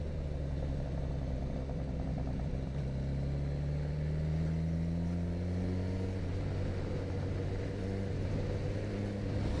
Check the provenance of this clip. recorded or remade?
recorded